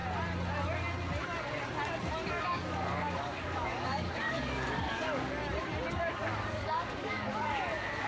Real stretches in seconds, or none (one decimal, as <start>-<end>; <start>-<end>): 0.0-2.3; 5.4-5.9